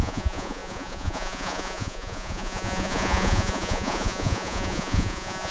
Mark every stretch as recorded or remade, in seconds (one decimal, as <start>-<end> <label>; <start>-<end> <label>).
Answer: 0.0-5.5 remade